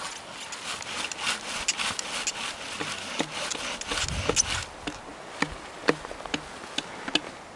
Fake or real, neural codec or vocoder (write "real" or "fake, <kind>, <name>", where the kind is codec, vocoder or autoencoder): real